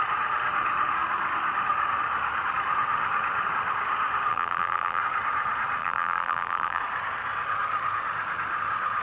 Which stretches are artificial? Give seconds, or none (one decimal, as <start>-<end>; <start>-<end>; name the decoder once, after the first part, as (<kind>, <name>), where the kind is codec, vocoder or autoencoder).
4.3-5.0 (vocoder, BigVGAN v2); 5.8-6.8